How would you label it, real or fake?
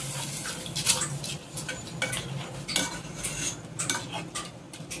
real